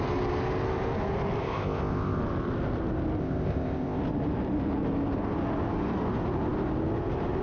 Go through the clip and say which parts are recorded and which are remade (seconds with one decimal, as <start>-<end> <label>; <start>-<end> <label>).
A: 0.0-1.4 recorded; 1.4-2.2 remade; 2.2-3.2 recorded; 3.2-4.0 remade; 4.0-7.4 recorded